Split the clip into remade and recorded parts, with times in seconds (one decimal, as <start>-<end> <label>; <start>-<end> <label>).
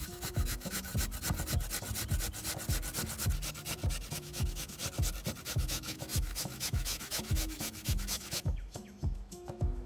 0.0-0.9 remade; 0.9-4.1 recorded; 4.1-4.8 remade; 4.8-5.4 recorded; 5.4-9.9 remade